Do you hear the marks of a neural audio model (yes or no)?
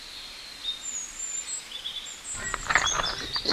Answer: no